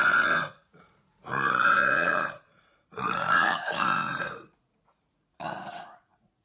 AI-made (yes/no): yes